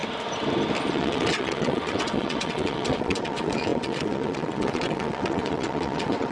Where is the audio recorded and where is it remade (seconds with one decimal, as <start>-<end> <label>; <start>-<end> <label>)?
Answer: 0.0-0.9 recorded; 0.9-6.3 remade